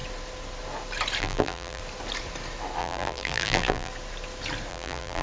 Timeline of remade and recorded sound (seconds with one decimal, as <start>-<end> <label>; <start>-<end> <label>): 0.0-1.2 recorded; 1.2-1.8 remade; 1.8-2.8 recorded; 2.8-3.9 remade; 3.9-4.7 recorded; 4.7-5.2 remade